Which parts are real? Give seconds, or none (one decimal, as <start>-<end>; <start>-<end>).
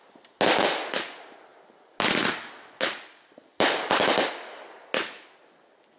0.0-6.0